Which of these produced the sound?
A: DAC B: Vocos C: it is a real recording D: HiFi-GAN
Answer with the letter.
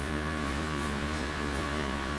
B